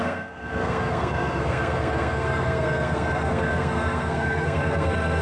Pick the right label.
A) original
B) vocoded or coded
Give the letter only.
B